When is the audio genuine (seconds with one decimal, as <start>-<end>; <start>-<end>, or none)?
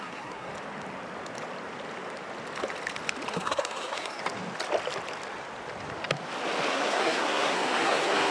0.5-3.3; 4.2-6.7